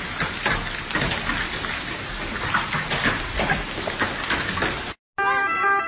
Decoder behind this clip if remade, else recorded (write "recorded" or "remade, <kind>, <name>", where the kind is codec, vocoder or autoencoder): recorded